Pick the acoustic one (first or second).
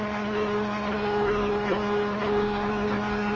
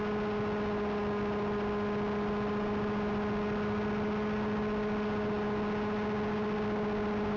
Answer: second